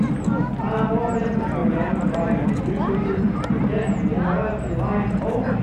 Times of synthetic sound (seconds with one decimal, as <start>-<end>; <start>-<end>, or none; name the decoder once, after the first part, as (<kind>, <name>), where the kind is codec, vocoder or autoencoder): none